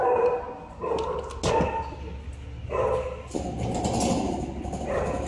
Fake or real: real